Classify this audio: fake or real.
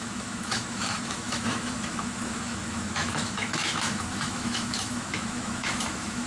fake